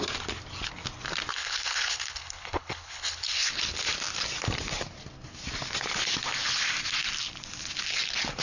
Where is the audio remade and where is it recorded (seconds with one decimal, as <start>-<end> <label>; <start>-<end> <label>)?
0.0-1.3 recorded; 1.3-3.5 remade; 3.5-8.4 recorded